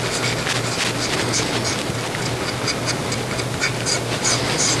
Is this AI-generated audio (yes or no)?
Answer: no